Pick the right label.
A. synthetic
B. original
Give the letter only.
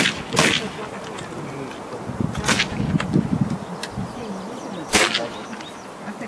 B